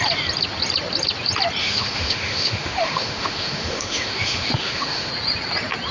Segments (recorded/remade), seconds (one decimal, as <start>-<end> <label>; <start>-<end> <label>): 0.0-1.6 recorded; 1.6-5.1 remade; 5.1-5.9 recorded